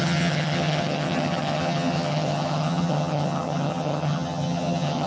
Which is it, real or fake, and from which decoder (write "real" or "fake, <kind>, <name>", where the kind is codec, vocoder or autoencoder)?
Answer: fake, vocoder, HiFi-GAN